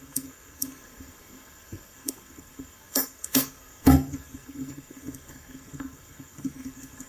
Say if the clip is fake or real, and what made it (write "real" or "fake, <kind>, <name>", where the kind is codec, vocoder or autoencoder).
fake, codec, SNAC